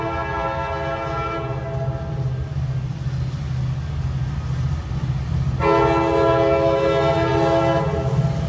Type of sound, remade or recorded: recorded